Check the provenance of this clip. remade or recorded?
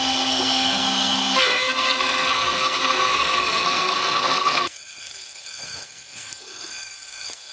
remade